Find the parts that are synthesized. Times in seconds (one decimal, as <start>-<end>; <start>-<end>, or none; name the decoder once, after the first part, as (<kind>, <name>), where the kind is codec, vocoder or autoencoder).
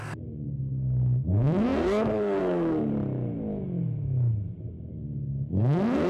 0.0-2.9 (codec, SNAC); 4.9-6.1